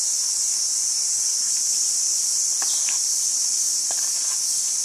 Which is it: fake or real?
real